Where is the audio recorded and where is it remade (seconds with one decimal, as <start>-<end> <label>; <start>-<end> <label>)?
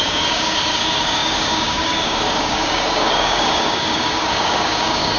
0.0-5.2 remade